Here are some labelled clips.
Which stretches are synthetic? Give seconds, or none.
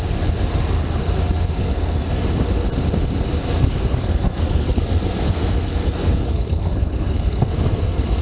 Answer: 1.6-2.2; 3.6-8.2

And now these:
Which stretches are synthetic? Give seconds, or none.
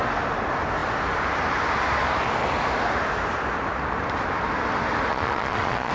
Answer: 5.1-5.9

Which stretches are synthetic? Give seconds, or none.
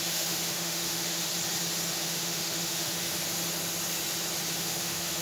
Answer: 0.0-1.3; 2.0-3.2; 4.6-5.2